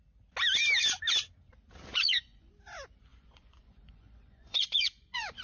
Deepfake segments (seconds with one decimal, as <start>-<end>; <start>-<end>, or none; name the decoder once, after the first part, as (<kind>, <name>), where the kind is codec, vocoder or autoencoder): 1.9-2.5 (vocoder, Vocos); 3.1-5.4